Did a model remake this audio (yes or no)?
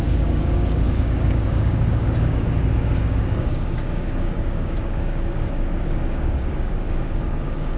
yes